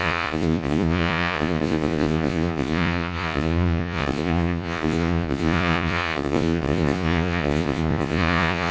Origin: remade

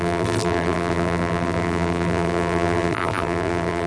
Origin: remade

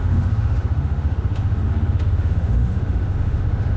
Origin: remade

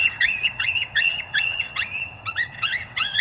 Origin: remade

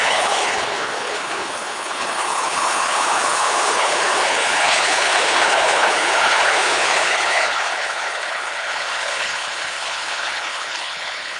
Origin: remade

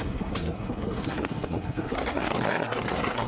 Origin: remade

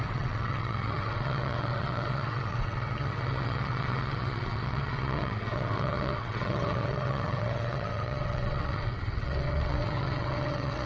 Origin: remade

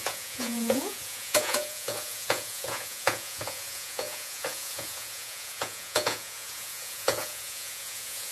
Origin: remade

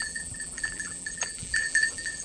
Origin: remade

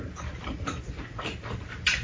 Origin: recorded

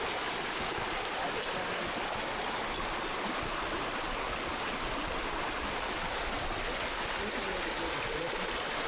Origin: recorded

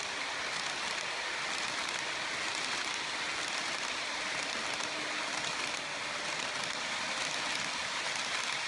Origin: recorded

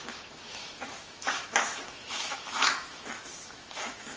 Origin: remade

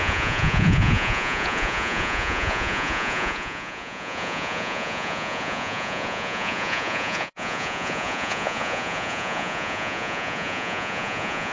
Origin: remade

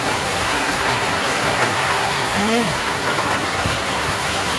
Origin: remade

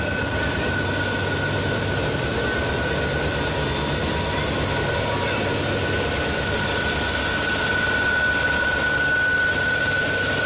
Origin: recorded